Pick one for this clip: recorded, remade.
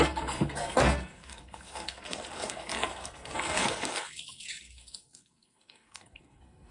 remade